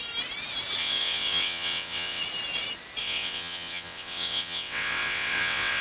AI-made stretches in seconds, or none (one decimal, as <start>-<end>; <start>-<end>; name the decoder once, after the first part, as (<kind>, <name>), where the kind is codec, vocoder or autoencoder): 0.8-2.2 (vocoder, WaveNeXt); 3.0-5.8